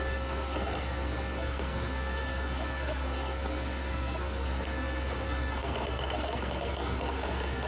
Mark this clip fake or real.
fake